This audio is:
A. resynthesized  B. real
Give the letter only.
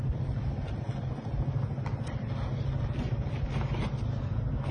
B